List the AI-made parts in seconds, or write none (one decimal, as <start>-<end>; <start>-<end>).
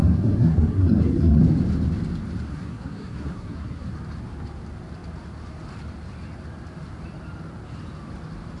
0.0-1.4; 2.5-3.9